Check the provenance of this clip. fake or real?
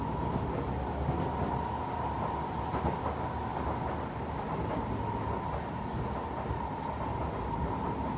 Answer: real